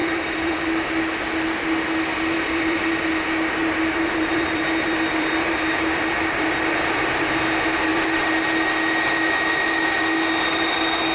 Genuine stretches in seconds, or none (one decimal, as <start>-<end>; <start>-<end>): 0.6-2.1; 3.1-3.6; 7.4-7.9; 8.4-11.1